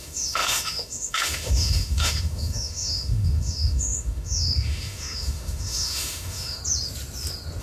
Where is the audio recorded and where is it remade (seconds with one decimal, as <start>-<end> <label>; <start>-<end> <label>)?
0.0-6.6 remade; 6.6-7.6 recorded